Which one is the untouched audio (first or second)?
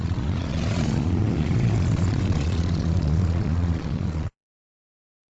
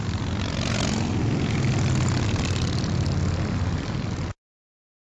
second